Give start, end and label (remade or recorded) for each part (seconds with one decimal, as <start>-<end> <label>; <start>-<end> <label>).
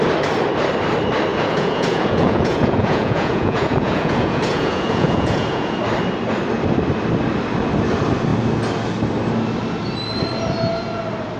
0.0-1.3 recorded; 1.3-5.8 remade; 5.8-11.4 recorded